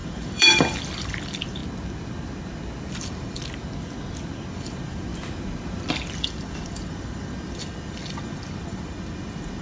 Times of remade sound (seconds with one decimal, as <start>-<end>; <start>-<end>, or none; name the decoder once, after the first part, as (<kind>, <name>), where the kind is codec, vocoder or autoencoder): 0.0-1.6 (vocoder, BigVGAN v2); 2.9-3.4; 4.5-5.1; 5.9-9.6